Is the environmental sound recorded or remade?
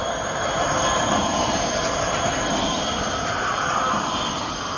remade